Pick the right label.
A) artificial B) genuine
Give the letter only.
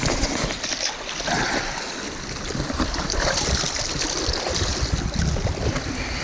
B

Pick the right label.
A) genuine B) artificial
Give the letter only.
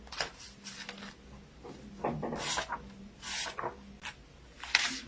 A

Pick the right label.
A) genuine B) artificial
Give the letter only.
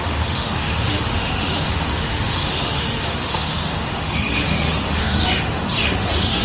B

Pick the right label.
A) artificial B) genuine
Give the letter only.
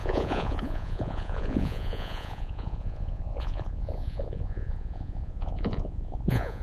A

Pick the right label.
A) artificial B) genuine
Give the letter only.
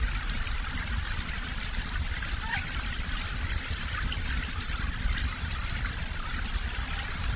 B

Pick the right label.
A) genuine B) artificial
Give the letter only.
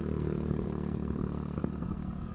B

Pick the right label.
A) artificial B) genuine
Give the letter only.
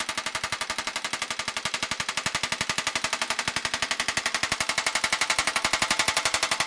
B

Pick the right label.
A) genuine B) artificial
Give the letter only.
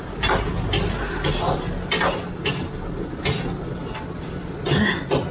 A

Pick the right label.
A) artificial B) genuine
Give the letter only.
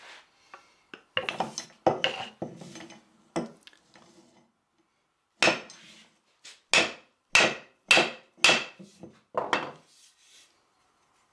B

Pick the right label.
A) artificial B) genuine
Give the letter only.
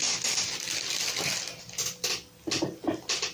B